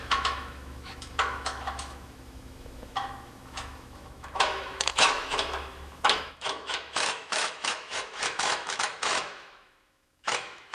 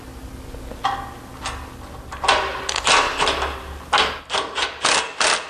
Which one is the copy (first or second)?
first